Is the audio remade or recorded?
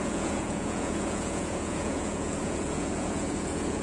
remade